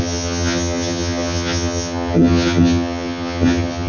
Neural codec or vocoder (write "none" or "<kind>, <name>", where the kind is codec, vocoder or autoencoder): vocoder, HiFi-GAN